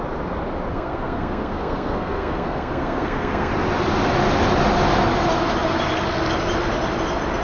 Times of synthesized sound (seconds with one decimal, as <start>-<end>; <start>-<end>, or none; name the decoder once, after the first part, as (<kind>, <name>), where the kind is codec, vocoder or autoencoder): 0.7-3.5 (codec, SNAC)